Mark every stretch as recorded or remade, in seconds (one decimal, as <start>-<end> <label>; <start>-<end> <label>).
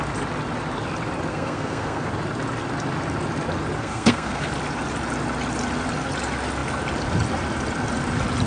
0.0-1.3 recorded; 1.3-2.1 remade; 2.1-3.8 recorded; 3.8-4.5 remade; 4.5-8.5 recorded